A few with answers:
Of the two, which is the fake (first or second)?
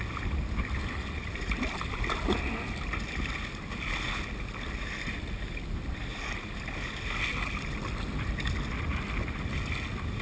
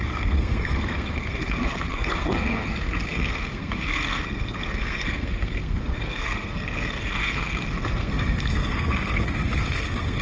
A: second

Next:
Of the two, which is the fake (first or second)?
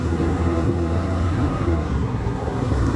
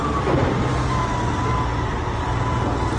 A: first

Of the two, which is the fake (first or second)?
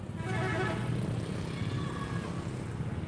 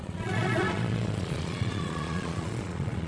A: second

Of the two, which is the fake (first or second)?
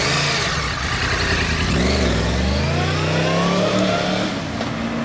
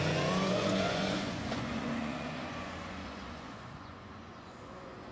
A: second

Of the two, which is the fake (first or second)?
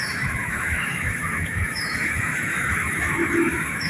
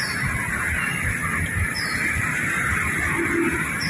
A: first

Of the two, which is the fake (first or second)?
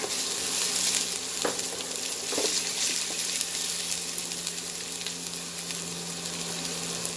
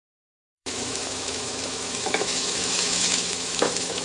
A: second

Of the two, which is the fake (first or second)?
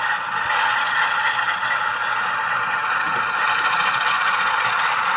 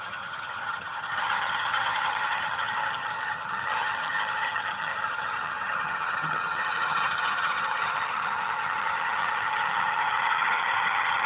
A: second